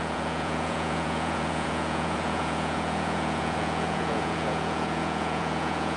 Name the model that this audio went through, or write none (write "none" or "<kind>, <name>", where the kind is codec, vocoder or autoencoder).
vocoder, Vocos